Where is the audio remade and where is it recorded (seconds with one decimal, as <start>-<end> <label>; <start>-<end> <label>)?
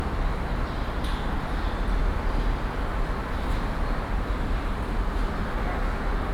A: 0.0-6.3 recorded